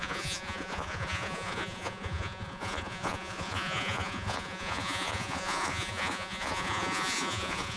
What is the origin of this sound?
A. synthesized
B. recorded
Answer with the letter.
A